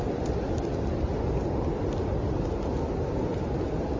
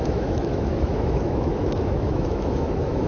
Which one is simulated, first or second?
second